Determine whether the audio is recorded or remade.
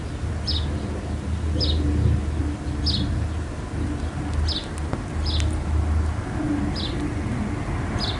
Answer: recorded